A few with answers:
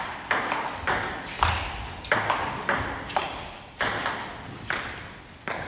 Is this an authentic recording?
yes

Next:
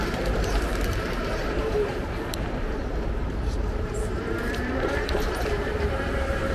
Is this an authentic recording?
no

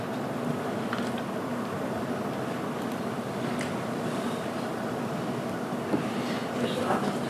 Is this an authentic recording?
yes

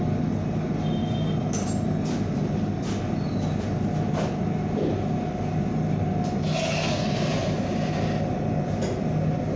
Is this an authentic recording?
yes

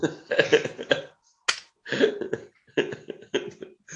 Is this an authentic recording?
yes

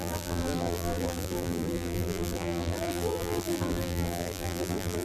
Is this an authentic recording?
no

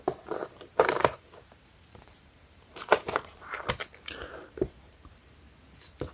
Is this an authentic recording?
no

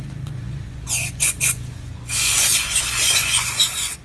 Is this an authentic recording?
no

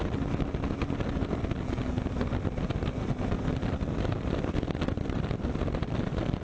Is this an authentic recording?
yes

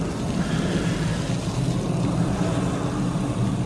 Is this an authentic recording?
yes